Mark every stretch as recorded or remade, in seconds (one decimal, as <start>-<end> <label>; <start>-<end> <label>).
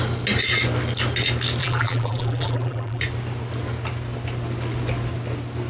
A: 0.0-1.6 recorded; 1.6-3.0 remade; 3.0-5.7 recorded